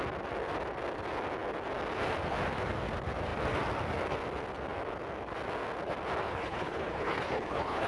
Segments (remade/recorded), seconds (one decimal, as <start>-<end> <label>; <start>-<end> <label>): 0.0-6.3 recorded; 6.3-7.9 remade